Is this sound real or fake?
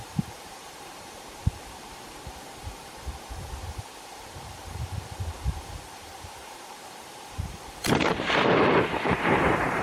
fake